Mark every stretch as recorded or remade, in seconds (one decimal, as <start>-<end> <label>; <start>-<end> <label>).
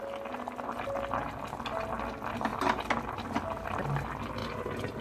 0.0-5.0 recorded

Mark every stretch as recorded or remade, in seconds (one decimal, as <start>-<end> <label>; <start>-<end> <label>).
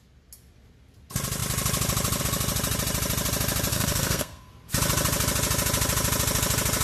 0.0-3.7 recorded; 3.7-4.5 remade; 4.5-6.8 recorded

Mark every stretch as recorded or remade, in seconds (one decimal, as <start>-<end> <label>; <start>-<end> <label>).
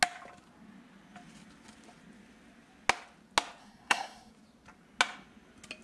0.0-3.6 recorded; 3.6-4.3 remade; 4.3-5.8 recorded